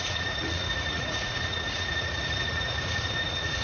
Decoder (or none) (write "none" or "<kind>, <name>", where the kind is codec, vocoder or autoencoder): vocoder, Vocos